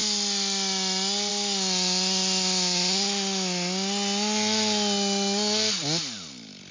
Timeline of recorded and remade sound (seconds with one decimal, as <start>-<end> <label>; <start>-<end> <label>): 0.0-6.7 recorded